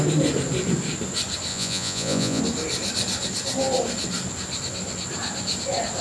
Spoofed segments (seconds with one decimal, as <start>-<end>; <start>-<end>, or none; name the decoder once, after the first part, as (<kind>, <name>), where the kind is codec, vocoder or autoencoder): 1.5-2.4 (vocoder, Vocos)